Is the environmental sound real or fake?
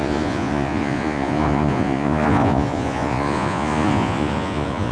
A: fake